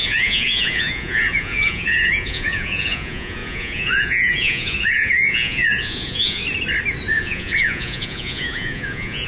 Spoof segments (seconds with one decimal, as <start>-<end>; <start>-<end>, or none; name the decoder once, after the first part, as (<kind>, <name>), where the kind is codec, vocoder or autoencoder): 0.0-6.4 (vocoder, Vocos); 7.1-9.3